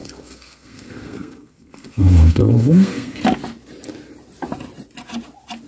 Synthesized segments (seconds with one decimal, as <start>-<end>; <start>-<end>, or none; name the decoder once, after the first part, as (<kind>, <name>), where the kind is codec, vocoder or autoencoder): 0.0-3.2 (codec, SNAC)